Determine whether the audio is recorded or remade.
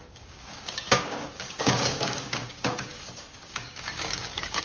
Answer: remade